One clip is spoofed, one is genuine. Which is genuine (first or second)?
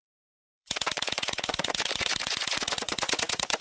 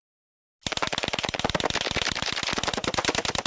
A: second